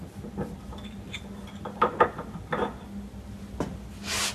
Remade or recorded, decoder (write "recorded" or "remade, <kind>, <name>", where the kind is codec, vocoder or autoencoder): recorded